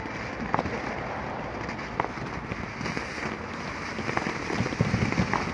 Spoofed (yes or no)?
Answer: no